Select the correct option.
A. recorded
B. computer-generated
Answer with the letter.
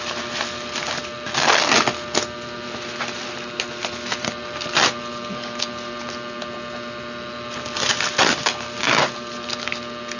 A